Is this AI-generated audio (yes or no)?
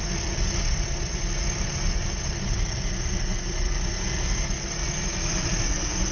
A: no